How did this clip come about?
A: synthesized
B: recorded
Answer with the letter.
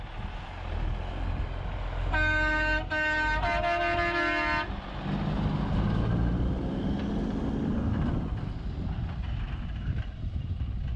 B